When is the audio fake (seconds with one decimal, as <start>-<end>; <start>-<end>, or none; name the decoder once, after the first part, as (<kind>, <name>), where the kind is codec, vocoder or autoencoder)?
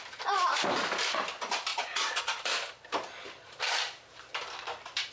1.7-2.2 (vocoder, Vocos)